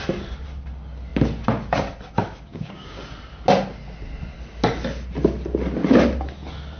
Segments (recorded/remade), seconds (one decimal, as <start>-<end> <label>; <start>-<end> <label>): 0.0-2.5 recorded; 2.5-3.0 remade; 3.0-6.8 recorded